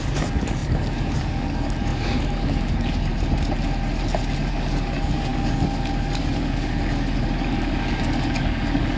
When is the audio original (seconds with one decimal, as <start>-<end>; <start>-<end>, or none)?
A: 3.1-4.5